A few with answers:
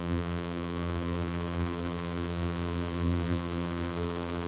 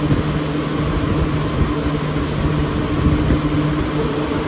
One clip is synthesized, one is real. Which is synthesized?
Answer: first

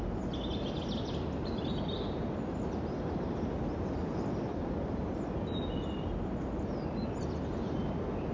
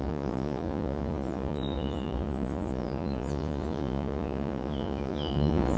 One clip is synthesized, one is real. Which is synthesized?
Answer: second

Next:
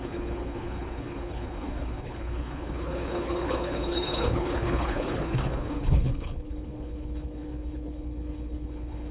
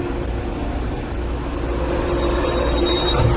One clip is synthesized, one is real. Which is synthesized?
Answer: first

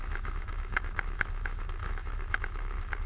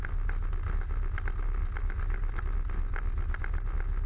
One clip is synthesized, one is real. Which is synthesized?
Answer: first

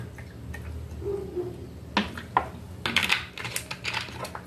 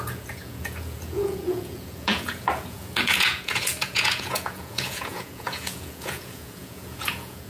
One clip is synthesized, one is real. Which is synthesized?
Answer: second